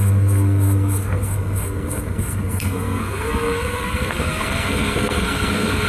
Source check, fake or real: fake